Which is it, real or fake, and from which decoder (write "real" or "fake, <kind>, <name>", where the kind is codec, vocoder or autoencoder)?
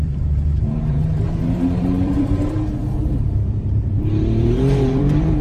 fake, vocoder, BigVGAN v2